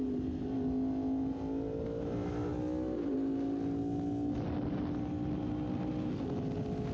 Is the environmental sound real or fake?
real